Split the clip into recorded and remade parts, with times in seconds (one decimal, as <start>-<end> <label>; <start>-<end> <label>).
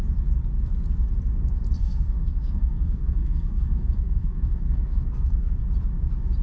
0.0-1.8 recorded; 1.8-5.6 remade; 5.6-6.4 recorded